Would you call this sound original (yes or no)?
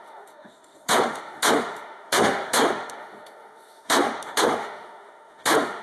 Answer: no